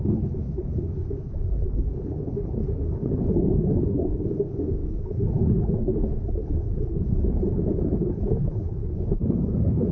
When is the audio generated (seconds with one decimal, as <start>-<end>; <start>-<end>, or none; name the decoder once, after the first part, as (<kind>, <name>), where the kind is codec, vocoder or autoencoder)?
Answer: 0.0-9.9 (codec, HILCodec)